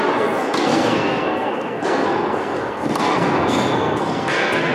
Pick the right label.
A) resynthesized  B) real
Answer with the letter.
A